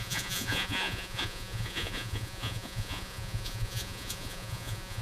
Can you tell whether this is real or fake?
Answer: fake